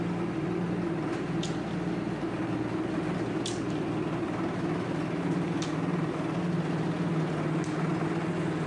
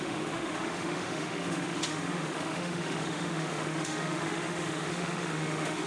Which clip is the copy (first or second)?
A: second